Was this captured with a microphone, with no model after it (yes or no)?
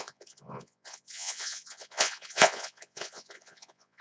no